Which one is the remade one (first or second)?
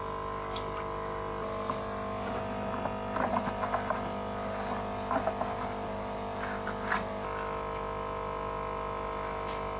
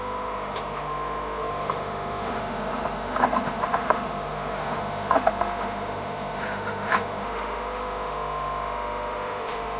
second